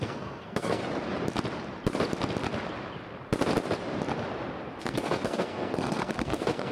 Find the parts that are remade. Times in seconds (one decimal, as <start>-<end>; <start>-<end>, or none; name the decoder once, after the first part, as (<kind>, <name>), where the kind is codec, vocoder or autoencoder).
0.0-0.8 (codec, SNAC); 4.8-6.7